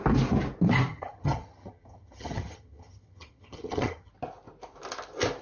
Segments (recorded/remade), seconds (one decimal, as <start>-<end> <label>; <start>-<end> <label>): 0.0-0.9 recorded; 0.9-4.1 remade; 4.1-5.4 recorded